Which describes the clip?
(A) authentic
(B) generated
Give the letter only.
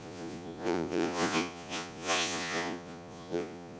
B